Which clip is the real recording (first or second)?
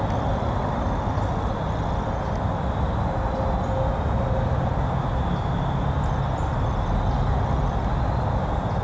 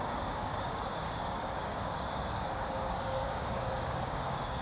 first